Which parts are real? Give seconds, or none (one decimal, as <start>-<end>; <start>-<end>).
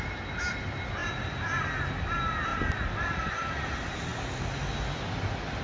0.0-5.6